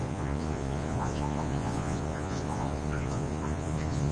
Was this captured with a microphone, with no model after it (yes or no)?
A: no